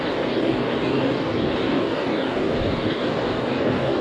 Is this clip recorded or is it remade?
remade